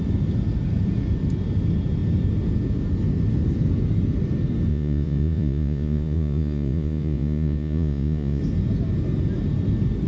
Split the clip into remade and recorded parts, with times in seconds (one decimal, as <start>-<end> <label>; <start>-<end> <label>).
0.0-4.7 recorded; 4.7-8.4 remade; 8.4-10.1 recorded